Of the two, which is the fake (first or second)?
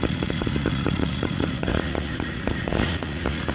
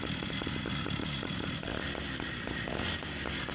first